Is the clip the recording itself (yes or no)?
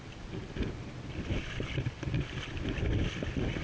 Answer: yes